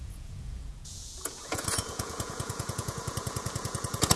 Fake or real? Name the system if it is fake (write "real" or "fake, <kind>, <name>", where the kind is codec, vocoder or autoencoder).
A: fake, vocoder, Vocos